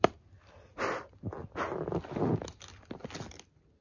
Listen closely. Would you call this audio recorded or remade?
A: recorded